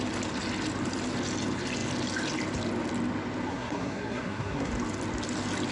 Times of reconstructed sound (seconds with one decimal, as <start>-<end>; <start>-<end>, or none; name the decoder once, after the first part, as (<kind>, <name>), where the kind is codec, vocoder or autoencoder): 3.5-4.7 (codec, SNAC)